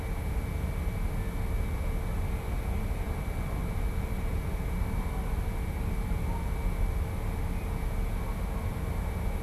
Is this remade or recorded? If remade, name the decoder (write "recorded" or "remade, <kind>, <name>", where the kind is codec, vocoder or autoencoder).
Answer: recorded